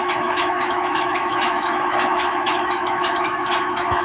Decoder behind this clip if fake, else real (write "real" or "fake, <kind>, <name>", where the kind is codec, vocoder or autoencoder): fake, autoencoder, DAC-VAE